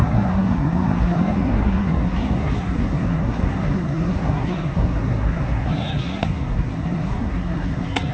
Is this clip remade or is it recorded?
remade